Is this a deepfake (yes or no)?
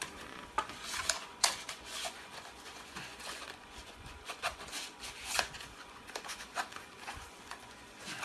yes